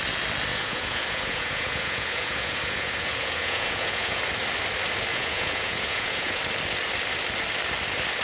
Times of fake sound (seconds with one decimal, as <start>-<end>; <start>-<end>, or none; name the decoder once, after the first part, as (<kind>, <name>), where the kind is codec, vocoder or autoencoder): 0.5-4.2 (vocoder, Vocos); 5.1-6.4